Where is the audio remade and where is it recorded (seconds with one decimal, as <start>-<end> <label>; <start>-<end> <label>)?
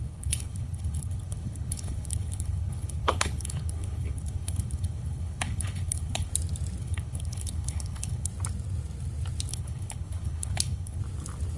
0.0-6.3 remade; 6.3-6.8 recorded; 6.8-8.3 remade; 8.3-9.5 recorded; 9.5-11.0 remade; 11.0-11.6 recorded